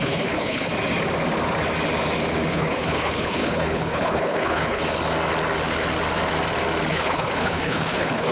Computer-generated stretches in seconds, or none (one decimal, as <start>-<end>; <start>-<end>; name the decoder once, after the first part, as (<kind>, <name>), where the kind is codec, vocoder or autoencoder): 0.0-0.7 (codec, HILCodec); 2.5-4.8; 6.9-8.3